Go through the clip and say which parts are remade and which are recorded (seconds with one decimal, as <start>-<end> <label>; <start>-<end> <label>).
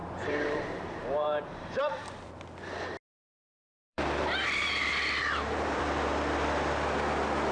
0.0-2.3 remade; 2.3-3.2 recorded; 3.2-5.8 remade; 5.8-7.5 recorded